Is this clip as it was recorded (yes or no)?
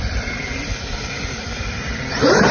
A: yes